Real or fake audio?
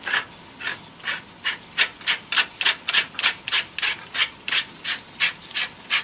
real